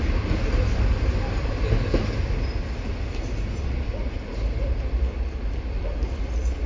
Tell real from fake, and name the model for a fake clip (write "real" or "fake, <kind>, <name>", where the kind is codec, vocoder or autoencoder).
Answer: real